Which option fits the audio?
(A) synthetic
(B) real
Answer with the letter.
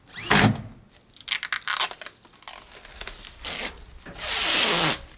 B